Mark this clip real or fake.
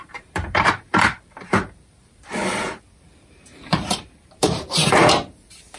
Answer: fake